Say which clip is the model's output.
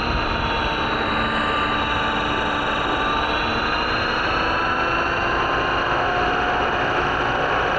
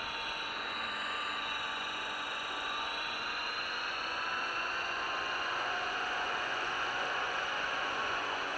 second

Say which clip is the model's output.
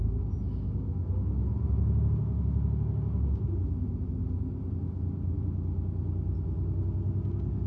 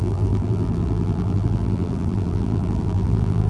second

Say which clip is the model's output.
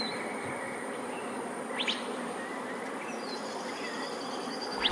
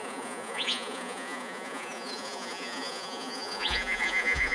second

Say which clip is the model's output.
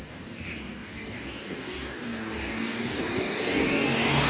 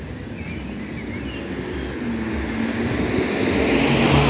first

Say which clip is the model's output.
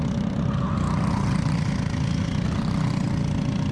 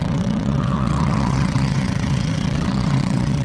second